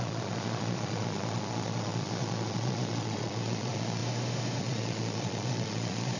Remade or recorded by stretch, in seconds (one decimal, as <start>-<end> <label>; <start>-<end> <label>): 0.0-4.0 remade; 4.0-4.6 recorded; 4.6-6.2 remade